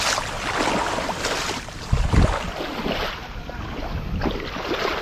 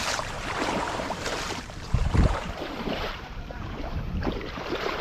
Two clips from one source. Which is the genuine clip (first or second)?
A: first